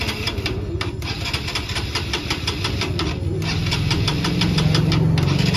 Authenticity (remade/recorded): recorded